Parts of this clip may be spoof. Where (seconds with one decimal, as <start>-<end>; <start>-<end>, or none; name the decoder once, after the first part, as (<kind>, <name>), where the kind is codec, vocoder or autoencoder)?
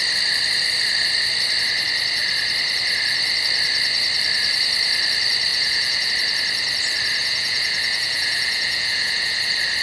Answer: 5.5-6.1 (vocoder, Vocos); 7.2-9.4